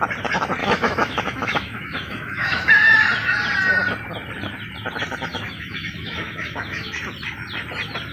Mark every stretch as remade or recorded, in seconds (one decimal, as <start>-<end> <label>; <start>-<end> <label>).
0.0-0.6 recorded; 0.6-2.7 remade; 2.7-5.3 recorded; 5.3-6.9 remade; 6.9-8.1 recorded